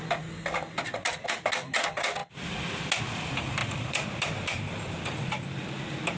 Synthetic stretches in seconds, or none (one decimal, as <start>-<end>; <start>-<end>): 3.6-4.7